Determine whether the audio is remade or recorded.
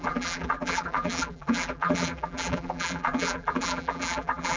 remade